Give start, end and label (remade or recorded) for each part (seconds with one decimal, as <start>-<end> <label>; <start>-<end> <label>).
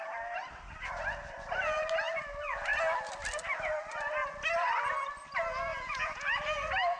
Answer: 0.0-5.7 recorded; 5.7-6.4 remade; 6.4-7.0 recorded